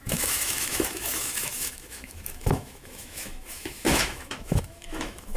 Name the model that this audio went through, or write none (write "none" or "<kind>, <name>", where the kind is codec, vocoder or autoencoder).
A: autoencoder, DAC-VAE